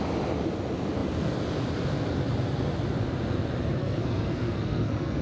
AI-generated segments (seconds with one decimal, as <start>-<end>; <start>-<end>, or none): 3.8-5.2